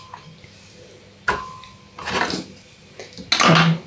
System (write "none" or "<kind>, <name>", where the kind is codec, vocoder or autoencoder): none